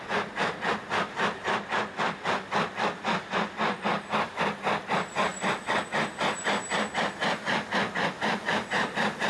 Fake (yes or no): no